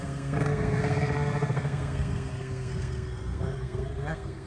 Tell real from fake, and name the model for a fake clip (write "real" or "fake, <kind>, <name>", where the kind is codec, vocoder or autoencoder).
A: fake, codec, SNAC